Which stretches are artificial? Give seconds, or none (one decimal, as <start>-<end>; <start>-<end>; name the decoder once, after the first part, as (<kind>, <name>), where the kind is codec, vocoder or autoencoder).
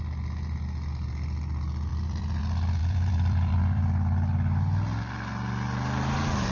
1.9-2.4 (vocoder, BigVGAN v2); 2.8-3.8